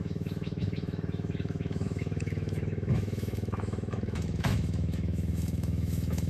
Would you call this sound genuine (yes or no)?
no